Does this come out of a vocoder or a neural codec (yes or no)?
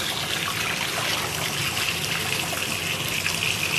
no